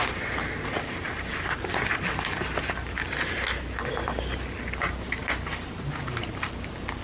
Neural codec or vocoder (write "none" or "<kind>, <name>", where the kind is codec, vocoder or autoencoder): none